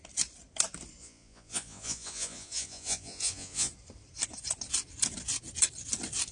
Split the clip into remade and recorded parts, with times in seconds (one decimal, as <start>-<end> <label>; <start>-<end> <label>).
0.0-1.0 recorded; 1.0-3.7 remade; 3.7-6.3 recorded